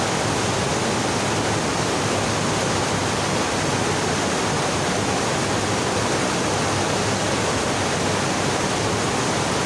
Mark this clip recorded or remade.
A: recorded